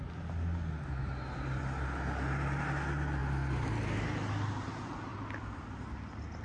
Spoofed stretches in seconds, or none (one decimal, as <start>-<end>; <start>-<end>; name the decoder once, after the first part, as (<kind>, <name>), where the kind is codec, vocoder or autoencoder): 3.2-3.7 (vocoder, BigVGAN v2); 5.1-5.9